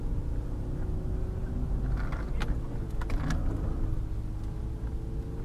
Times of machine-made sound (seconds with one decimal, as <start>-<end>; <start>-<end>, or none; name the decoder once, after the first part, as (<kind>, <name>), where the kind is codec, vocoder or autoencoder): none